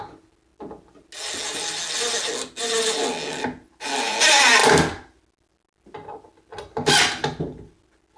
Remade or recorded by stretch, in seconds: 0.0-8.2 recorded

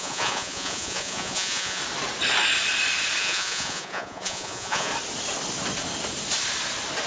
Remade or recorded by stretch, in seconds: 0.0-1.8 remade; 1.8-3.2 recorded; 3.2-4.9 remade; 4.9-7.1 recorded

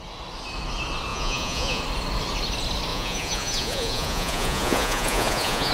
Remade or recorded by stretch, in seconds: 0.0-1.1 recorded; 1.1-1.8 remade; 1.8-2.9 recorded; 2.9-5.7 remade

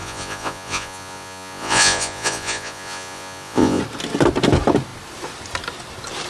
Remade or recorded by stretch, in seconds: 0.0-3.8 remade; 3.8-6.3 recorded

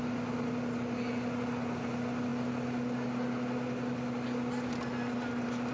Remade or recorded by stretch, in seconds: 0.0-5.7 recorded

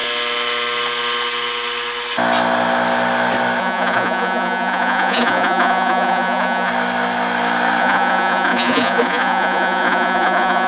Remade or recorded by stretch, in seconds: 0.0-3.6 recorded; 3.6-6.7 remade; 6.7-7.8 recorded; 7.8-10.7 remade